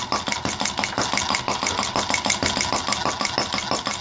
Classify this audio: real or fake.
real